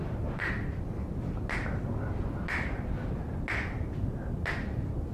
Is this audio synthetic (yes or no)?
no